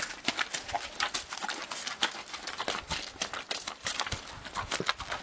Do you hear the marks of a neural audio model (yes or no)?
yes